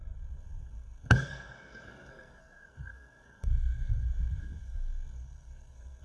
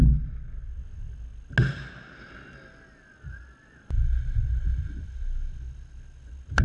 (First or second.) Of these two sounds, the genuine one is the second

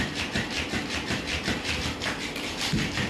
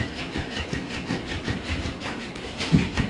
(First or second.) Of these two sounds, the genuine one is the first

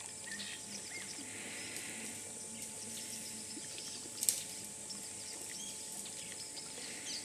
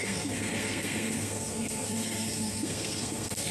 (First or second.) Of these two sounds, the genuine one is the first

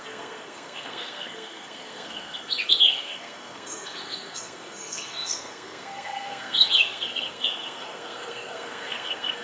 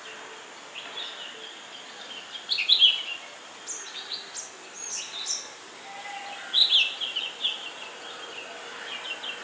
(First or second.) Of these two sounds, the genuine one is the second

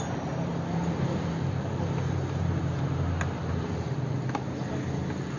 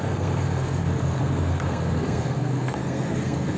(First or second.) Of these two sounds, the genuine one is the first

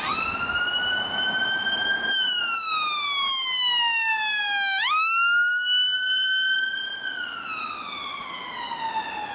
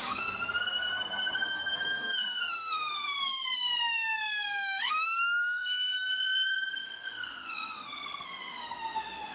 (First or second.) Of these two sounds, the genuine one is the first